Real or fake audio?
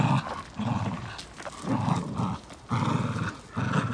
real